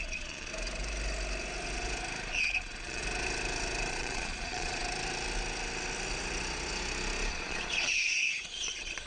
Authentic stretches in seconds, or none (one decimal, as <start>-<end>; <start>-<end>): 0.5-2.3; 3.0-3.9; 4.8-7.3